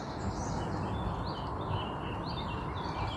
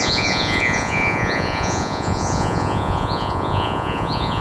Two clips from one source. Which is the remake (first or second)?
second